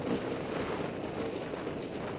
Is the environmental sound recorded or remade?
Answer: recorded